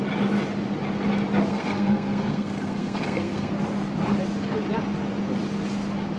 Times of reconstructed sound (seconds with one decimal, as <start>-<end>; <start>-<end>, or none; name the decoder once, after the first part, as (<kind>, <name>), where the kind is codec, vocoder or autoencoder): 1.5-3.5 (codec, SNAC)